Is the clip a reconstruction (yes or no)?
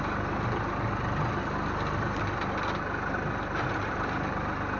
no